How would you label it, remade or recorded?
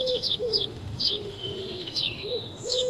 remade